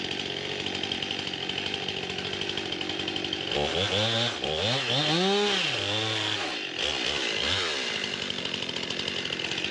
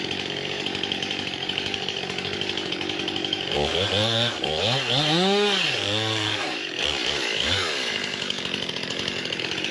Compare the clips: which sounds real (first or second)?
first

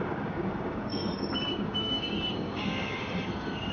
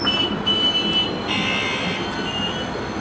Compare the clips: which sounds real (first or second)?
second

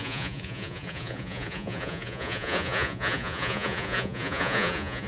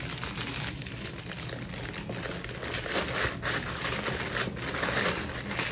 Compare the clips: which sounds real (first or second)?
second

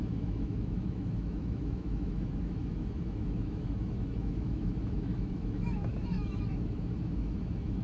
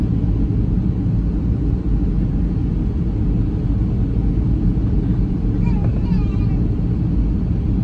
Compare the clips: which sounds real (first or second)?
second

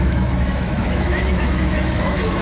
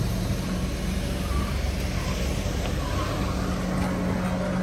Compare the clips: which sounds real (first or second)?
second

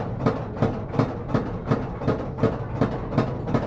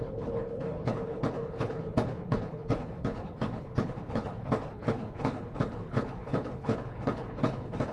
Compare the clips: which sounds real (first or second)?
first